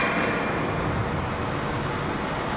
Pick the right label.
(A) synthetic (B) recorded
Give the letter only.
B